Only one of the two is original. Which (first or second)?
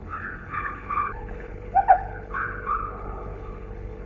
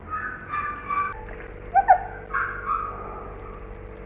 second